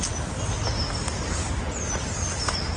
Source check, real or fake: real